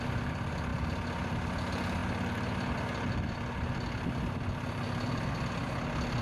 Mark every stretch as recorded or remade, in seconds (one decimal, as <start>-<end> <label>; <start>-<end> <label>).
0.0-6.2 recorded